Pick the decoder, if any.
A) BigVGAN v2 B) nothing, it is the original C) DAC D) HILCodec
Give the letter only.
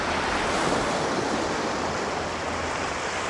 B